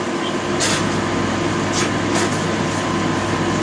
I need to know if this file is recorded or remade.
recorded